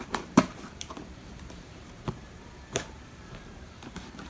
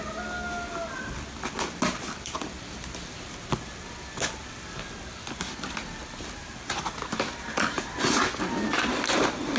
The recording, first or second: second